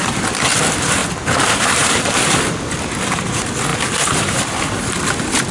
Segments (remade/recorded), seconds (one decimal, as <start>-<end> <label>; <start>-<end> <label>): 0.0-1.0 recorded; 1.0-2.1 remade; 2.1-3.7 recorded; 3.7-4.4 remade; 4.4-5.5 recorded